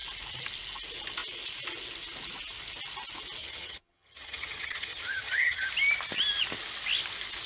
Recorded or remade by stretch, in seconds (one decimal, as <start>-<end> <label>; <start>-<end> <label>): 0.0-3.4 recorded; 3.4-5.7 remade; 5.7-7.5 recorded